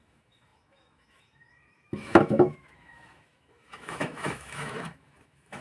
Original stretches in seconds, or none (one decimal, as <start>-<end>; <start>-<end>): none